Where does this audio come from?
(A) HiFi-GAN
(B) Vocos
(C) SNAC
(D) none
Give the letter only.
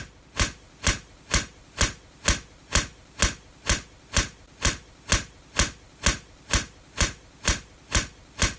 D